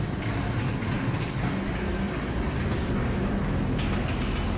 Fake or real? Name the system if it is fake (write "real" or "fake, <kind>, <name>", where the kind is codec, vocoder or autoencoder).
real